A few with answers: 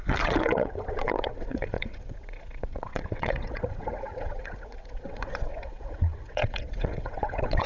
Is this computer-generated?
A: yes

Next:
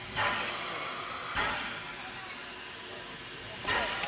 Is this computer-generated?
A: no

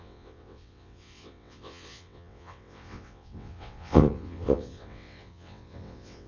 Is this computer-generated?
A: yes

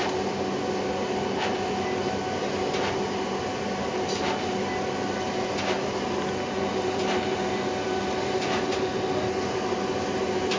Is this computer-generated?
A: no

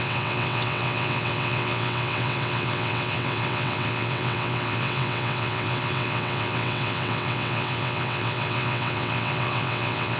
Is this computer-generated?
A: yes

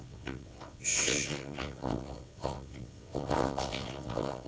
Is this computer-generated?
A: yes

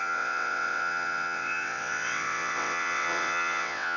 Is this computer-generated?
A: yes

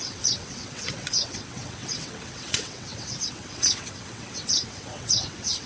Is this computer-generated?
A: yes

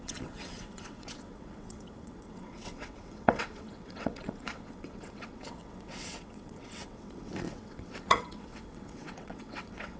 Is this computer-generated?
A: yes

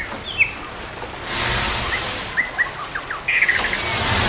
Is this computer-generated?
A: no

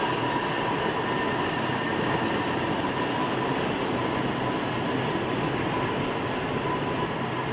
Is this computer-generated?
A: no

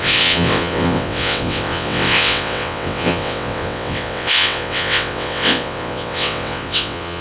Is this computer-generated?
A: yes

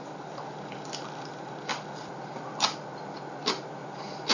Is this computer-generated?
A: no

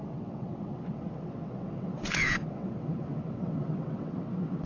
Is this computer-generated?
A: yes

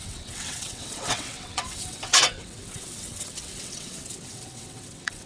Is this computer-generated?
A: yes